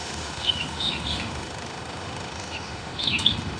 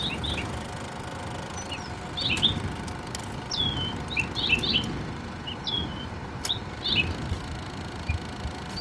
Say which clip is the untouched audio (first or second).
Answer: second